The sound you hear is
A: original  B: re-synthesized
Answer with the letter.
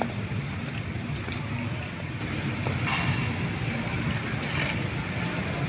A